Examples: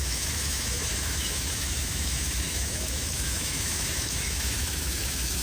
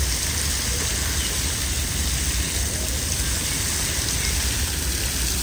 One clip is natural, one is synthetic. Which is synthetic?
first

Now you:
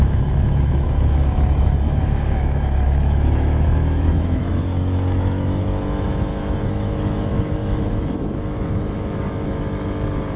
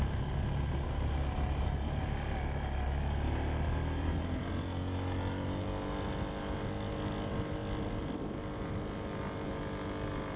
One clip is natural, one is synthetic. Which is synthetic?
first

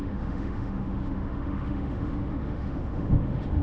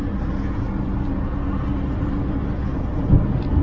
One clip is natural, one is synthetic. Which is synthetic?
first